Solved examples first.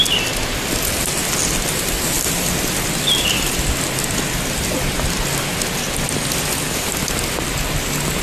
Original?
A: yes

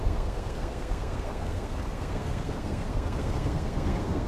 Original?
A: no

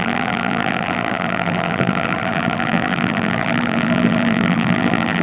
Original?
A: no